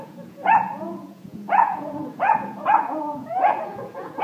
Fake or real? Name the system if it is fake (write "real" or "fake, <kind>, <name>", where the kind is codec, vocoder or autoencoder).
fake, vocoder, Vocos